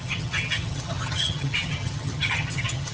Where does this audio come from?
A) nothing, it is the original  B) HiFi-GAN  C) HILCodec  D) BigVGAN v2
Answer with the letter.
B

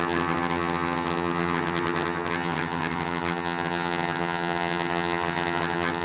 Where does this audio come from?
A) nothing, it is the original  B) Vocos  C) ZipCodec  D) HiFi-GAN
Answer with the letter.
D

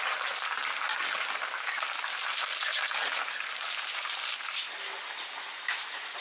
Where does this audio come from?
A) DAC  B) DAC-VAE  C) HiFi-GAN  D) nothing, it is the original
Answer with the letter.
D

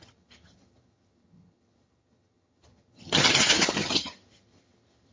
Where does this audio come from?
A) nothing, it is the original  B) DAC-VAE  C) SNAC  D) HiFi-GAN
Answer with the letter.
D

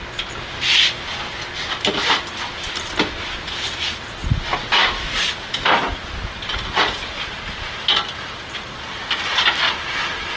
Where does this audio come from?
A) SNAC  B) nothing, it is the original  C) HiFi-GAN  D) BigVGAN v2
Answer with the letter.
B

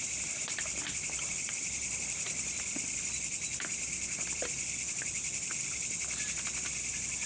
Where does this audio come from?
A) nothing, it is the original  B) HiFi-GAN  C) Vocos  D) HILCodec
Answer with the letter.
A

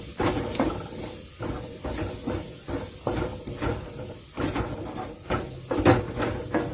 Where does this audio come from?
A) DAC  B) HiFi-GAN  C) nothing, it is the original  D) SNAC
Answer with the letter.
C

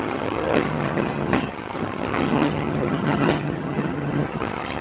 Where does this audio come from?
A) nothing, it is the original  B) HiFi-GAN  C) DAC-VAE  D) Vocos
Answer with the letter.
B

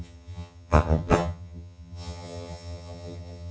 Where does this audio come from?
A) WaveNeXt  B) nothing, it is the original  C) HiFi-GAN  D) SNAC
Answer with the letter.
C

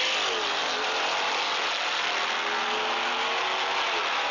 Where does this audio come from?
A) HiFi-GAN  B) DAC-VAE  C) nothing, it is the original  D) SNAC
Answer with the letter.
C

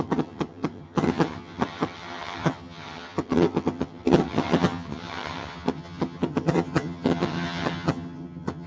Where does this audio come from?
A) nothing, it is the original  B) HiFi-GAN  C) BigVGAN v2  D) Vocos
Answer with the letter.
B